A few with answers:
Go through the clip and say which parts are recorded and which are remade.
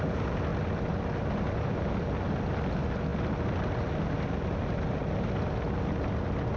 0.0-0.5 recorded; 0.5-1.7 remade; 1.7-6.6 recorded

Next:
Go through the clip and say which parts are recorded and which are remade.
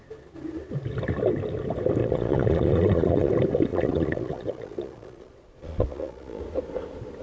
0.0-2.0 recorded; 2.0-3.3 remade; 3.3-3.7 recorded; 3.7-6.4 remade; 6.4-7.2 recorded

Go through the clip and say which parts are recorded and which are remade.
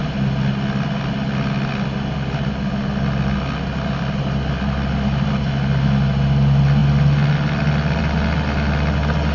0.0-9.3 recorded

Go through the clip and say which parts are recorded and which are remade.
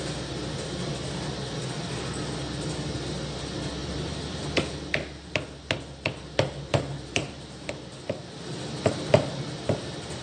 0.0-3.8 recorded; 3.8-4.4 remade; 4.4-6.7 recorded; 6.7-7.7 remade; 7.7-10.2 recorded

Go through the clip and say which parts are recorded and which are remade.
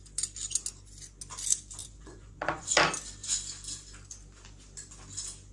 0.0-1.8 recorded; 1.8-2.8 remade; 2.8-5.5 recorded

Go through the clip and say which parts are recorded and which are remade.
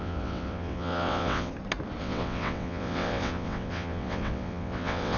0.0-1.5 remade; 1.5-2.0 recorded; 2.0-5.2 remade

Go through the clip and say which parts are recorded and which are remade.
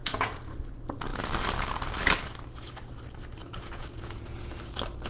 0.0-0.7 remade; 0.7-3.4 recorded; 3.4-4.4 remade; 4.4-5.1 recorded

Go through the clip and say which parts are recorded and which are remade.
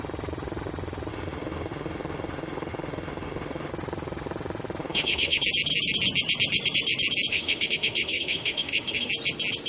0.0-1.1 recorded; 1.1-3.7 remade; 3.7-4.8 recorded; 4.8-5.4 remade; 5.4-7.3 recorded; 7.3-9.1 remade; 9.1-9.7 recorded